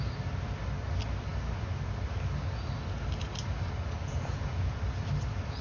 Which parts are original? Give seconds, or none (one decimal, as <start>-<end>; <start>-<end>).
0.0-4.0; 4.8-5.6